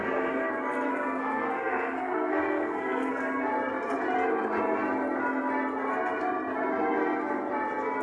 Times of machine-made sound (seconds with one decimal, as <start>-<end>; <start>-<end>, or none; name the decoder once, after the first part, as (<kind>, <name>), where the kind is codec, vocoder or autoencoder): 0.0-0.5 (codec, SNAC); 0.9-3.2